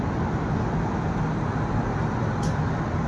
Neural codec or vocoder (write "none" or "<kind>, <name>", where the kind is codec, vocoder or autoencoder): none